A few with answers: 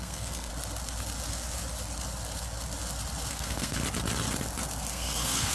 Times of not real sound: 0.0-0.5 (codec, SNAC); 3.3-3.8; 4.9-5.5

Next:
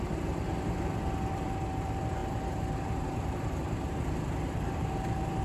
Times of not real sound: 0.0-0.5 (vocoder, BigVGAN v2); 1.3-5.4

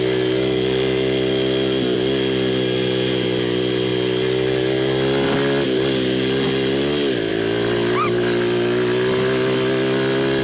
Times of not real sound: none

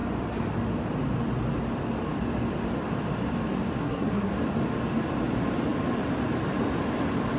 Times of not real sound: 3.8-4.3 (codec, SNAC)

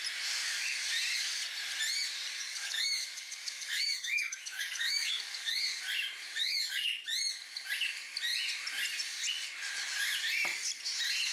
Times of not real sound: 2.4-5.8 (codec, DAC); 6.4-7.0